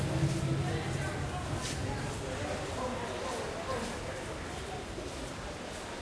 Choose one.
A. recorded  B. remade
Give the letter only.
A